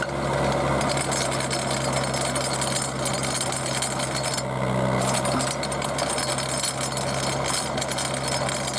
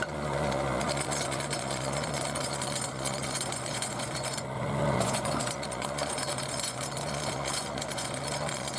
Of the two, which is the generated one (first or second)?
second